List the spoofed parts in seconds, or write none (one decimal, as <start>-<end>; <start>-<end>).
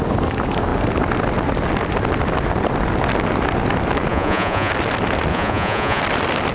4.1-4.7; 5.3-6.0